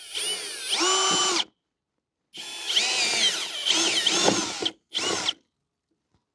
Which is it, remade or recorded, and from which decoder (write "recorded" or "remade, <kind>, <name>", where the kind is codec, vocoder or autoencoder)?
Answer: recorded